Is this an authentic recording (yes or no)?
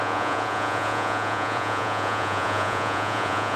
no